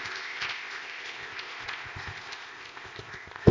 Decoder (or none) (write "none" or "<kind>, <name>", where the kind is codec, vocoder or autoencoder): codec, ZipCodec